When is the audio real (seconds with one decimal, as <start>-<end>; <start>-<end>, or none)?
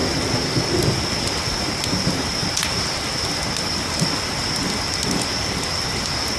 0.0-6.4